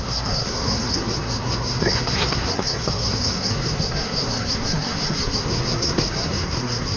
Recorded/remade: remade